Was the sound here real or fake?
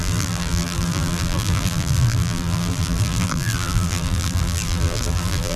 fake